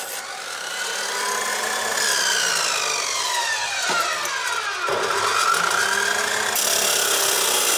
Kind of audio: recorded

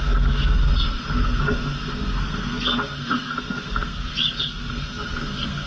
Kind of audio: remade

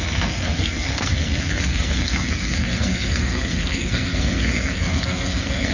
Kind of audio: remade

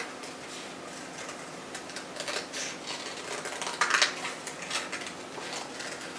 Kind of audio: recorded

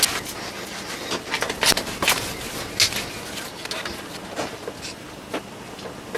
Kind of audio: recorded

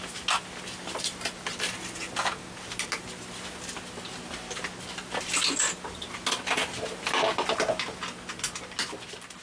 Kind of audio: recorded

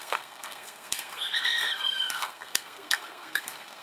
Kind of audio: remade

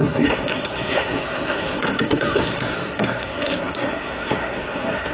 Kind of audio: remade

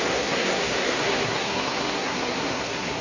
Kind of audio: remade